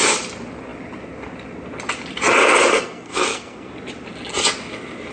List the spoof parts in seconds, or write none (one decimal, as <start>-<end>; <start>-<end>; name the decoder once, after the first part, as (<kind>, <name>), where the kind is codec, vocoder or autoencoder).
2.7-3.7 (codec, SNAC)